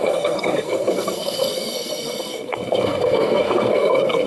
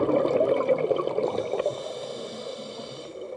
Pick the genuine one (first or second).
second